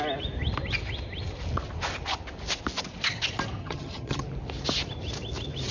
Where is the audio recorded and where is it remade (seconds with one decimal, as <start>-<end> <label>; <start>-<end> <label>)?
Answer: 0.0-3.6 recorded; 3.6-4.2 remade; 4.2-5.7 recorded